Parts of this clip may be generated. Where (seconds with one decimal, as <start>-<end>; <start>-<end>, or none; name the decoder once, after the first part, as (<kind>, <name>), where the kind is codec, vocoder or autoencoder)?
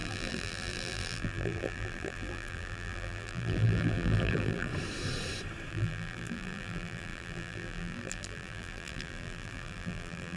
0.0-4.7 (vocoder, BigVGAN v2); 5.7-10.4